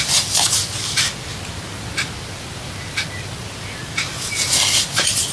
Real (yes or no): yes